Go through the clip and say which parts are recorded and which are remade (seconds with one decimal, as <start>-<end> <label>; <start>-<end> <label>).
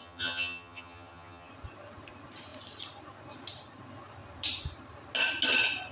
0.0-1.5 remade; 1.5-5.9 recorded